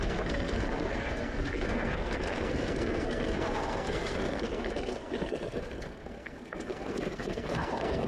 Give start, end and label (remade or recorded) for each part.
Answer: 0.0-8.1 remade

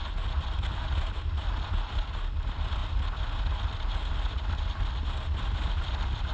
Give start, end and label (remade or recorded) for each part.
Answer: 0.0-6.3 recorded

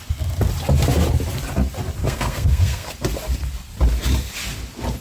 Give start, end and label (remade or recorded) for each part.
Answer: 0.0-2.0 recorded; 2.0-2.9 remade; 2.9-5.0 recorded